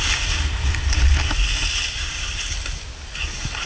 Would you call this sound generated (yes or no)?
no